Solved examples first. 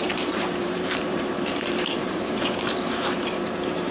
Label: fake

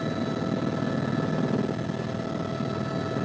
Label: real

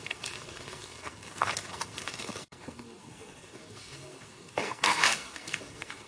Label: fake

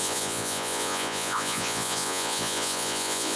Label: fake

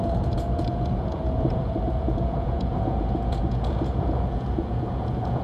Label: fake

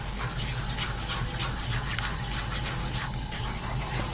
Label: real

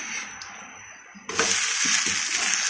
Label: real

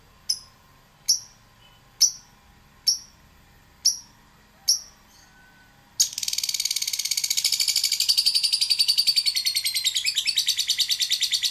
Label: real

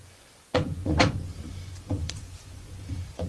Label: fake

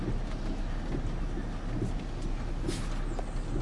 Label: real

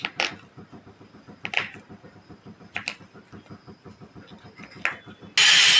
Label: real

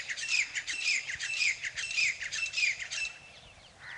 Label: fake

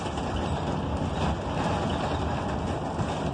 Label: real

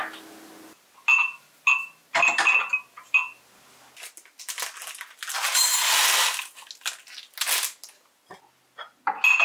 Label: real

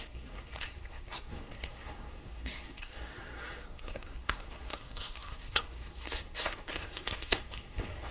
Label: fake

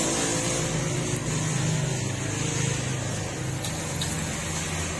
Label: real